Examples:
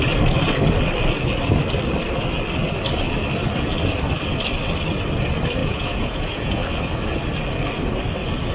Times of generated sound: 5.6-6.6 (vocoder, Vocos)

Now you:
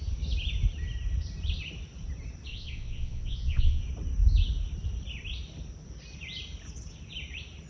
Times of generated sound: 2.5-3.8 (vocoder, Vocos)

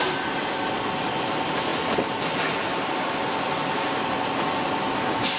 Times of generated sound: none

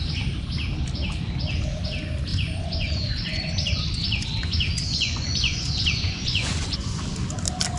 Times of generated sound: 2.3-7.0 (vocoder, Vocos)

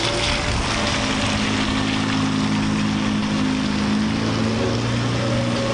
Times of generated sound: none

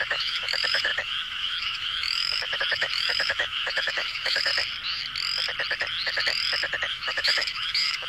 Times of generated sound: 0.0-4.5 (autoencoder, DAC-VAE); 6.9-8.1

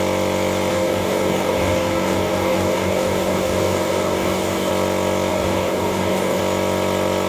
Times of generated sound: 0.7-4.7 (codec, DAC); 5.3-6.4